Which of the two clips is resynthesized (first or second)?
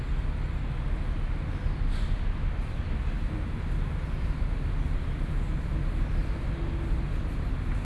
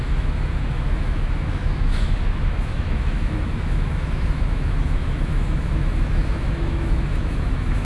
second